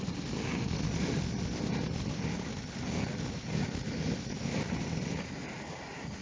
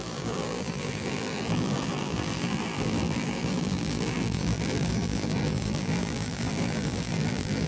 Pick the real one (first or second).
first